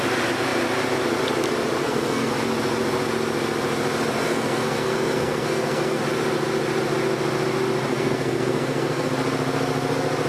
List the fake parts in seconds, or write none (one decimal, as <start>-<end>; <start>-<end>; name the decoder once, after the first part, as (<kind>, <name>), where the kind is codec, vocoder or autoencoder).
1.8-2.3 (codec, SNAC); 4.2-6.0; 7.9-9.1